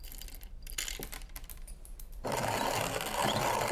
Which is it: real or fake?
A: real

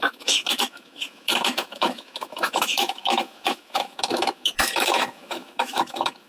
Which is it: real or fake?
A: fake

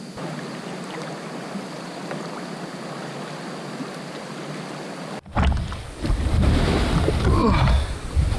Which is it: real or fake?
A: real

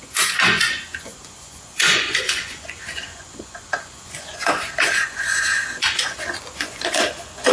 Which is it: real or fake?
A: fake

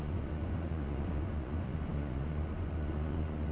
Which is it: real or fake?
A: fake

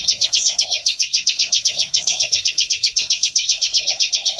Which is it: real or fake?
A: fake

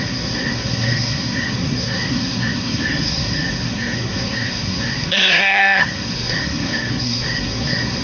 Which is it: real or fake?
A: fake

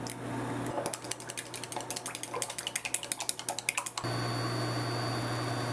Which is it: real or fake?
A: real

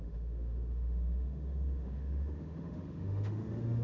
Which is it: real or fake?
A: fake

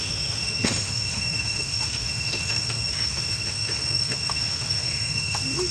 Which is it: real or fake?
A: fake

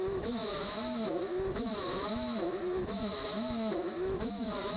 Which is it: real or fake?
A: fake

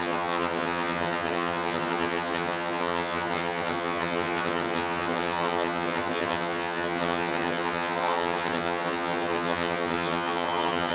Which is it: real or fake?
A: fake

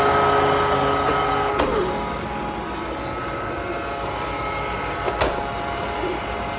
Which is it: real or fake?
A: real